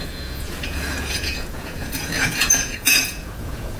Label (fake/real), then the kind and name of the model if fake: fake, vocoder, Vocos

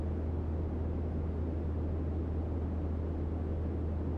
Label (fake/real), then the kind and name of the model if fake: real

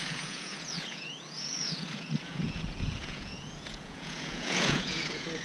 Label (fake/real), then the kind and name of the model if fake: fake, vocoder, Vocos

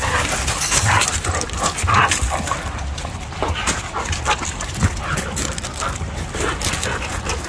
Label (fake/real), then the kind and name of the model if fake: real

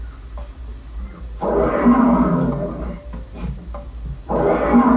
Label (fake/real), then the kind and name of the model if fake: real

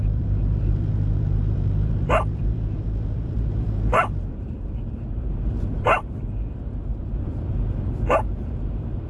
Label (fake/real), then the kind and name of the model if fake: fake, vocoder, BigVGAN v2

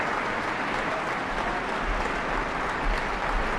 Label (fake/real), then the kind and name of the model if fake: real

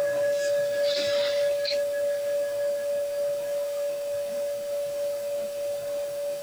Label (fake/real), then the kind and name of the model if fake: fake, codec, DAC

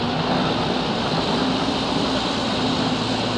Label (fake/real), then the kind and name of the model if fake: real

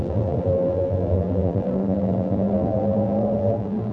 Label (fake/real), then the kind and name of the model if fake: fake, vocoder, BigVGAN v2